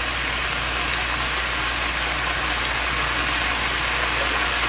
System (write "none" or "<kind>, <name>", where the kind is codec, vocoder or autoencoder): none